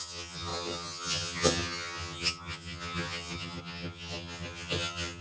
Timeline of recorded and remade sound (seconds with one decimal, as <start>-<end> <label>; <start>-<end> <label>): 0.0-5.2 remade